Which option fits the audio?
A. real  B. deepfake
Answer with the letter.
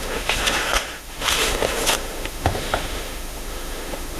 B